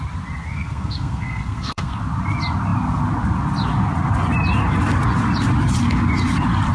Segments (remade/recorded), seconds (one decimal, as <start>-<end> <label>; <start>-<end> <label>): 0.0-0.5 recorded; 0.5-2.0 remade; 2.0-6.7 recorded